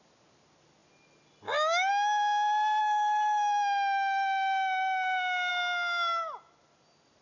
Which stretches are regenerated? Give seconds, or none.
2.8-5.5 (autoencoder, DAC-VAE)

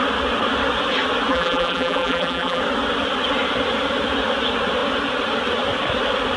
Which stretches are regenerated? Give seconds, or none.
1.3-2.6 (vocoder, BigVGAN v2)

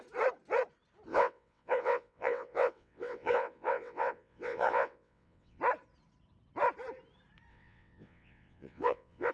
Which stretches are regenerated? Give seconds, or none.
1.1-5.6 (vocoder, WaveNeXt); 7.5-9.3